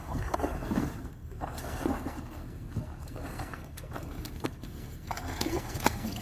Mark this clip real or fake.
fake